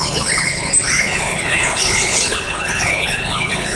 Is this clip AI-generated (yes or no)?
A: yes